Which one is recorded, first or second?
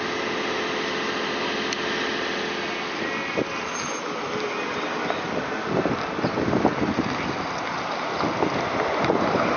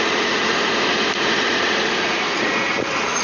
first